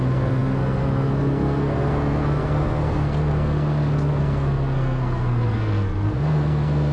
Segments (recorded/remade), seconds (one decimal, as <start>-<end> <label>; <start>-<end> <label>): 0.0-6.9 remade

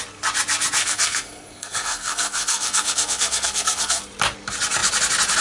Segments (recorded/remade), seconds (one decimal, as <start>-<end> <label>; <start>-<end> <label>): 0.0-0.8 recorded; 0.8-4.0 remade; 4.0-5.4 recorded

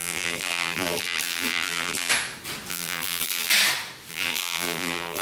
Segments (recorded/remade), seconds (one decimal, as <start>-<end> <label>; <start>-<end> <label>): 0.0-2.1 remade; 2.1-2.7 recorded; 2.7-3.5 remade; 3.5-4.1 recorded; 4.1-5.2 remade

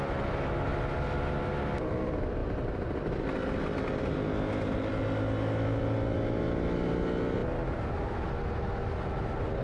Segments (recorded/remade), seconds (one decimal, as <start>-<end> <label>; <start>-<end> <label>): 0.0-9.6 recorded

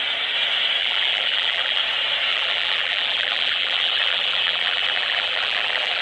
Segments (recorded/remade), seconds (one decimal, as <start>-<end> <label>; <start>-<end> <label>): 0.0-0.8 recorded; 0.8-1.8 remade; 1.8-2.3 recorded; 2.3-6.0 remade

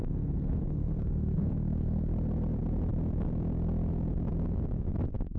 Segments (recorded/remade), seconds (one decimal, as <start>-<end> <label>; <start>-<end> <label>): 0.0-2.1 remade; 2.1-5.0 recorded; 5.0-5.4 remade